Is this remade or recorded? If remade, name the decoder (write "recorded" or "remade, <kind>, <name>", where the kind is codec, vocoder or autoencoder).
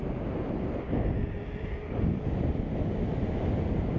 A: recorded